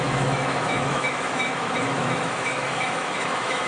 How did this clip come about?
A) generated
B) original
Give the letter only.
A